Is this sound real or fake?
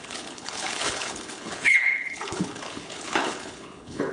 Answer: fake